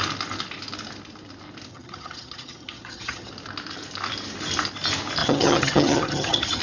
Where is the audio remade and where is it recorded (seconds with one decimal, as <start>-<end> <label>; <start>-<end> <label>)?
0.0-1.7 recorded; 1.7-3.3 remade; 3.3-5.2 recorded; 5.2-6.6 remade